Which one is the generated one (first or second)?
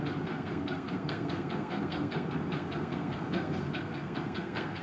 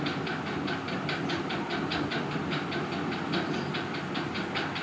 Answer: first